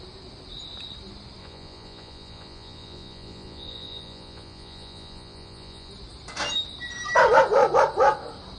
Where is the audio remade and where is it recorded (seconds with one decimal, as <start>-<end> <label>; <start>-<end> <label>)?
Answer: 0.0-1.4 recorded; 1.4-5.9 remade; 5.9-8.6 recorded

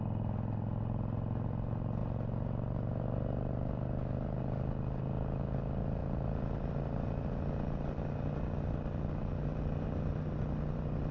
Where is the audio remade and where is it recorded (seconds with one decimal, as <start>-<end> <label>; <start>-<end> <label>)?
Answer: 0.0-11.1 recorded

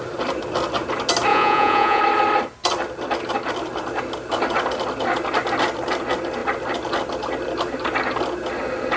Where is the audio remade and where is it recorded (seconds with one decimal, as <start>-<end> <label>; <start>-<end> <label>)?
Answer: 0.0-1.3 recorded; 1.3-2.0 remade; 2.0-9.0 recorded

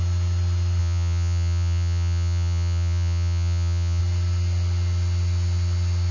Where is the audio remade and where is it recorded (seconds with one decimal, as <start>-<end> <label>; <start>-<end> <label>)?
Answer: 0.0-0.8 recorded; 0.8-4.0 remade; 4.0-6.1 recorded